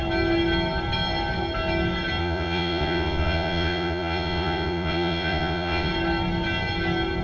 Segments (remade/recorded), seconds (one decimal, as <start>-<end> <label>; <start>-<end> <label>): 0.0-2.2 recorded; 2.2-5.9 remade; 5.9-7.2 recorded